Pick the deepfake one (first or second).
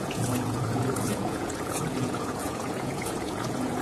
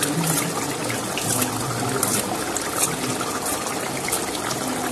first